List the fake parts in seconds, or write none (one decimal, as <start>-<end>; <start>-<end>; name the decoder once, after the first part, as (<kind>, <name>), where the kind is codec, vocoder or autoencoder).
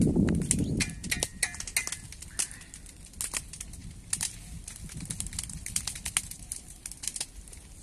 none